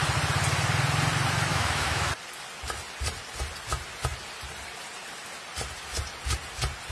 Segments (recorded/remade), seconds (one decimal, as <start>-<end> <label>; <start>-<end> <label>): 0.0-1.5 recorded; 1.5-2.1 remade; 2.1-6.9 recorded